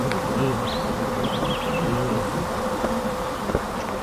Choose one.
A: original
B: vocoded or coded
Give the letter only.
A